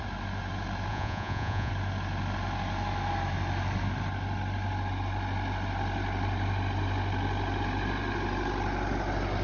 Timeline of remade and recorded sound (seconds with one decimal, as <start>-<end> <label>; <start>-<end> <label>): 0.0-0.9 recorded; 0.9-1.7 remade; 1.7-9.4 recorded